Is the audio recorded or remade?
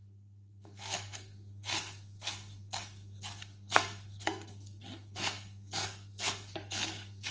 remade